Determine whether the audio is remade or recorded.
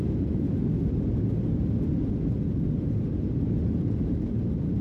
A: recorded